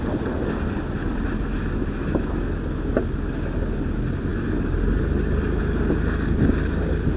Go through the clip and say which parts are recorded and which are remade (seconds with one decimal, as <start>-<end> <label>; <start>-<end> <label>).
0.0-1.0 recorded; 1.0-2.3 remade; 2.3-7.2 recorded